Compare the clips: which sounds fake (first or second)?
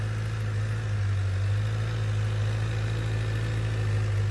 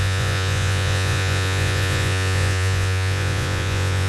second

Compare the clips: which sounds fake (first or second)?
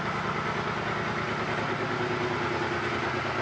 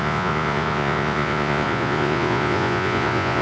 second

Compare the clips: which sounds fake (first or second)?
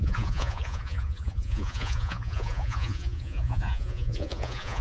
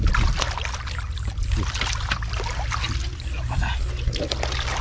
first